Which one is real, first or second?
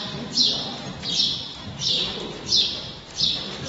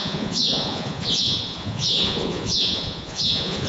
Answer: first